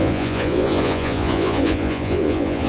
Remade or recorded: remade